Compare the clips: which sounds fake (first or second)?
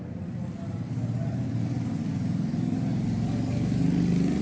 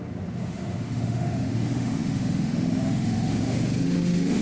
second